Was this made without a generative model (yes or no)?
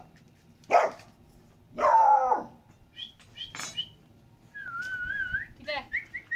yes